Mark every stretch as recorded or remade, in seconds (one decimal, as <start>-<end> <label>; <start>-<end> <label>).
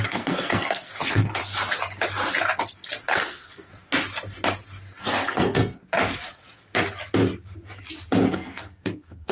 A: 0.0-1.4 remade; 1.4-3.1 recorded; 3.1-3.7 remade; 3.7-5.0 recorded; 5.0-5.8 remade; 5.8-8.3 recorded; 8.3-9.3 remade